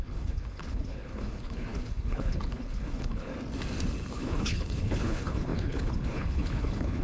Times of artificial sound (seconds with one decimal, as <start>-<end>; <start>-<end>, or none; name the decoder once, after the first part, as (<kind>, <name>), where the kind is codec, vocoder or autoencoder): 0.0-3.3 (codec, HILCodec); 4.1-7.0